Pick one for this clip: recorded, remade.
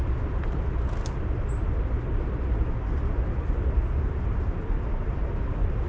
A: recorded